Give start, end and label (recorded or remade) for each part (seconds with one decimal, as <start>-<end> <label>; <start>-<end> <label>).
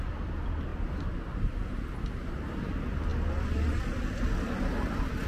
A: 0.0-5.3 recorded